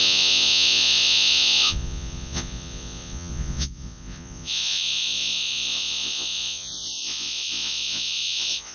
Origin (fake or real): fake